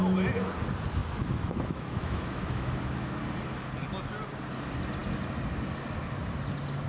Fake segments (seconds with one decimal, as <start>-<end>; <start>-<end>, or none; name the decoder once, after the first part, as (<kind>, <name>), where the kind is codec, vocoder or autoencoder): 1.0-3.2 (autoencoder, DAC-VAE)